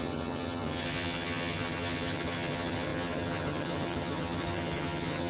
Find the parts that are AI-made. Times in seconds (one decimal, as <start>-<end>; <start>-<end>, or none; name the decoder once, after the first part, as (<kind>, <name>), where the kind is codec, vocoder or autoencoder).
0.0-5.3 (vocoder, HiFi-GAN)